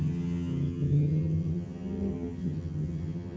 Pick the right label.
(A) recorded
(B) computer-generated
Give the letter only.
B